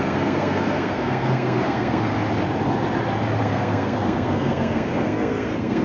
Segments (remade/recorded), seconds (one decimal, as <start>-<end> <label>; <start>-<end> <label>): 0.0-2.1 remade; 2.1-3.4 recorded; 3.4-5.8 remade